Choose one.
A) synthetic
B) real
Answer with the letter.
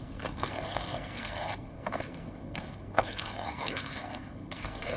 A